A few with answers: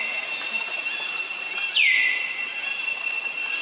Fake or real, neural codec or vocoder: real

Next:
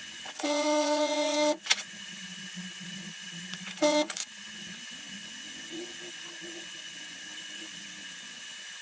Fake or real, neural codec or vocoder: fake, vocoder, Vocos